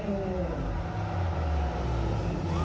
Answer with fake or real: real